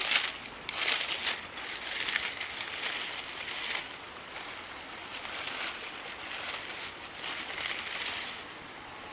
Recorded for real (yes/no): yes